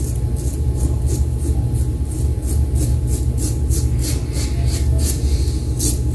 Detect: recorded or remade recorded